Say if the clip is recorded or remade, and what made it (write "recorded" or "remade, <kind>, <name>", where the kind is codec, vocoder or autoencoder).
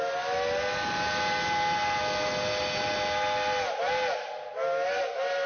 recorded